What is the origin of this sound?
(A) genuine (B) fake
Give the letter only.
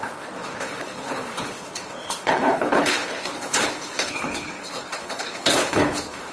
B